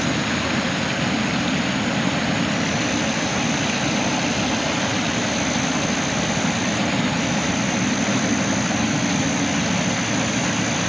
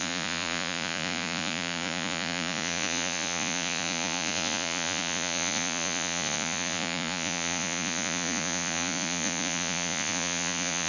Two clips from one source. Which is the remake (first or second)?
second